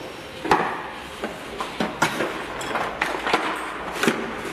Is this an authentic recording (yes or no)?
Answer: yes